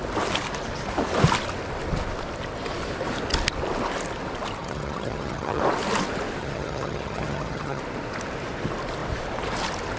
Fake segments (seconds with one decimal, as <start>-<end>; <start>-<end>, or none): 4.6-5.6; 6.4-7.8